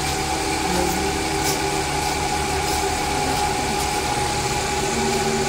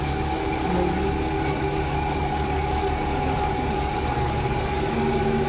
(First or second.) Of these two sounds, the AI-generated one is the second